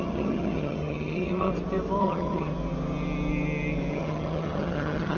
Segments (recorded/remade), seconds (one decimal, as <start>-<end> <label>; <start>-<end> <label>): 0.0-1.5 remade; 1.5-2.0 recorded; 2.0-2.5 remade; 2.5-3.9 recorded; 3.9-5.2 remade